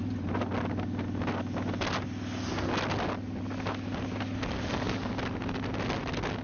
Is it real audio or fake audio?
real